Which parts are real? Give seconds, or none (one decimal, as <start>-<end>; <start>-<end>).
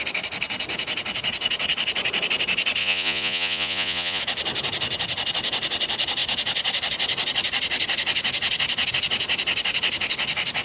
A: 0.0-2.8; 4.2-10.6